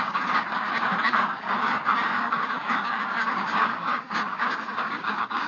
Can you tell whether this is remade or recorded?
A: remade